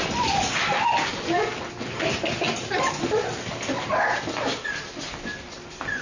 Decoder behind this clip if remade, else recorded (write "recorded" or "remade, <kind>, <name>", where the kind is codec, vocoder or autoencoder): recorded